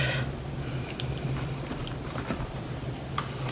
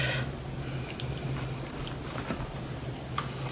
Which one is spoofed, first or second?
first